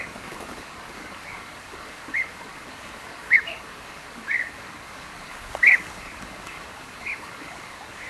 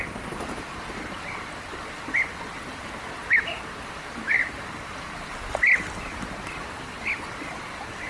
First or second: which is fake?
first